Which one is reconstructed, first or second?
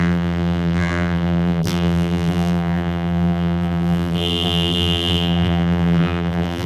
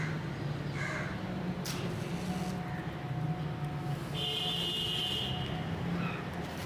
first